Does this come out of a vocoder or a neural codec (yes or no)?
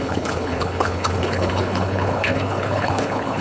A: yes